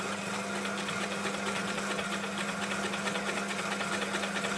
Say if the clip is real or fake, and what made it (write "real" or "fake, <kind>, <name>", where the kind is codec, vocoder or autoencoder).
real